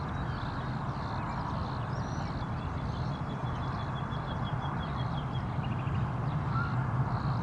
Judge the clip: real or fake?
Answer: real